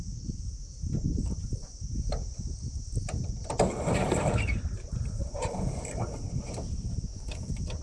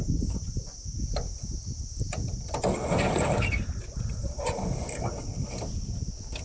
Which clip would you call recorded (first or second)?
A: second